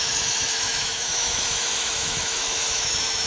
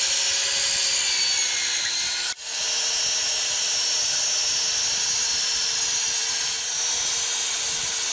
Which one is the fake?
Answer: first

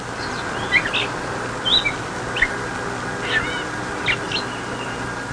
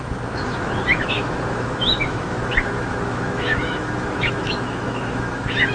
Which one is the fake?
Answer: second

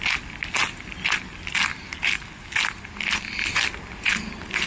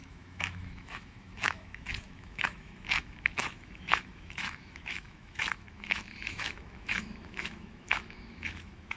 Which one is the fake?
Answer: second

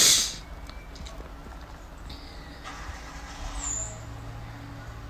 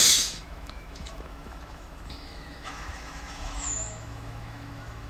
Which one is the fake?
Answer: second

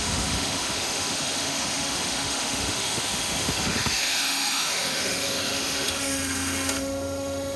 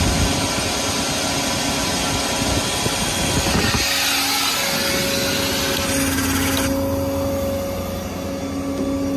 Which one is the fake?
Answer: first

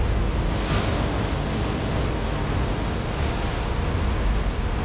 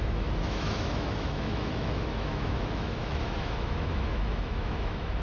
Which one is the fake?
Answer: second